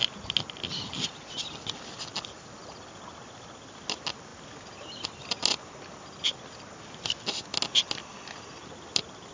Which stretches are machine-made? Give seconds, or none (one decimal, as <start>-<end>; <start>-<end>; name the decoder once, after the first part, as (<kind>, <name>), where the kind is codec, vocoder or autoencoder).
none